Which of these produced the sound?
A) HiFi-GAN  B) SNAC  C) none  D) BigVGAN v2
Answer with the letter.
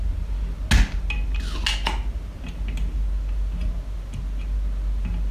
C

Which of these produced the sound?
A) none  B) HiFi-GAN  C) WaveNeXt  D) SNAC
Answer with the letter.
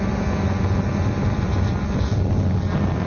A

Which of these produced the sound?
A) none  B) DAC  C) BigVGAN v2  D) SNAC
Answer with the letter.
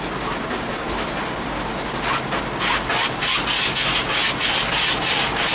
A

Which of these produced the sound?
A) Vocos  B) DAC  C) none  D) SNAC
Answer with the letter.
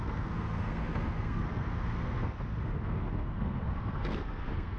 D